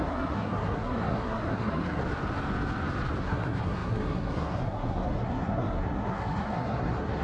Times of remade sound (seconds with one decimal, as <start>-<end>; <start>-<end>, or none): 0.0-2.0; 3.2-7.2